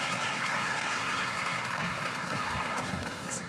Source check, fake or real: fake